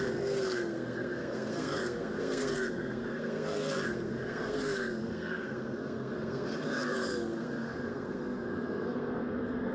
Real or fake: fake